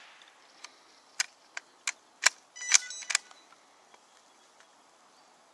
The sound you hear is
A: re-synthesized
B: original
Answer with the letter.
B